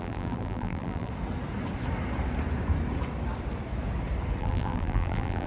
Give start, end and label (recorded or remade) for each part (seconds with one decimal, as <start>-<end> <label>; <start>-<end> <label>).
0.0-1.1 remade; 1.1-4.4 recorded; 4.4-5.5 remade